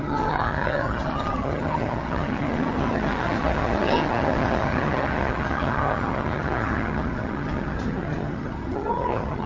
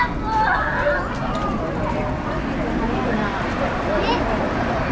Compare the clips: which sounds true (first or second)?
second